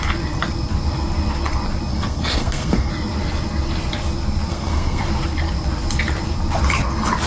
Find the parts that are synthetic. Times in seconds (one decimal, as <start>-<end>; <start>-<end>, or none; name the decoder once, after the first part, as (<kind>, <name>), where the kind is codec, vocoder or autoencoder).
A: 1.9-2.9 (codec, SNAC); 4.5-5.0